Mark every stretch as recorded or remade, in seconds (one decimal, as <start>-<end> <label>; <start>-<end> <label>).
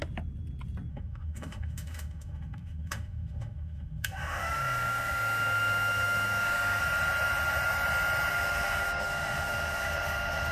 0.0-0.9 recorded; 0.9-6.8 remade; 6.8-8.3 recorded; 8.3-10.5 remade